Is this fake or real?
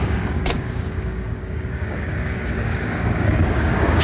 fake